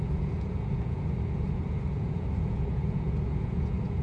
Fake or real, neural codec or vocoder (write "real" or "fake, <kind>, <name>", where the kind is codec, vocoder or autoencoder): fake, vocoder, Vocos